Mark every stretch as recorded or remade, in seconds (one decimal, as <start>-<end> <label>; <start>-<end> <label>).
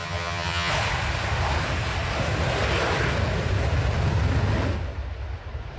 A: 0.0-0.7 remade; 0.7-5.8 recorded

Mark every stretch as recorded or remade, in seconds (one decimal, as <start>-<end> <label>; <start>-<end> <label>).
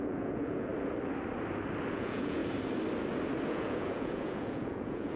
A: 0.0-0.7 remade; 0.7-1.9 recorded; 1.9-2.4 remade; 2.4-3.5 recorded; 3.5-5.2 remade